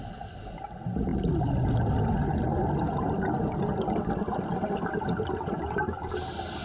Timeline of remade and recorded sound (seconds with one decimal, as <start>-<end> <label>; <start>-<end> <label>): 0.0-6.6 recorded